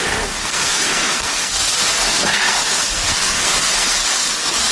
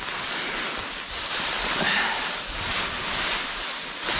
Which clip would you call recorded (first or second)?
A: second